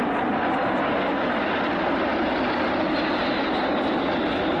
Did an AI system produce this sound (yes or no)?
no